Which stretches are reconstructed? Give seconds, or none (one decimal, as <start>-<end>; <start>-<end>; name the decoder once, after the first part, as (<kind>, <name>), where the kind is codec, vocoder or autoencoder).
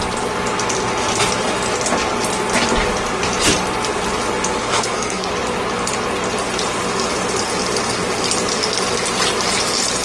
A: 4.6-5.3 (codec, SNAC)